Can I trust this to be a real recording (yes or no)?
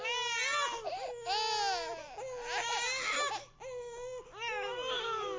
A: yes